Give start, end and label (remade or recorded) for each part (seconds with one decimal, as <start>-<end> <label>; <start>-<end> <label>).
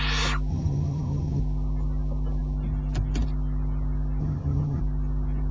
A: 0.0-0.5 recorded; 0.5-1.4 remade; 1.4-4.2 recorded; 4.2-4.8 remade; 4.8-5.5 recorded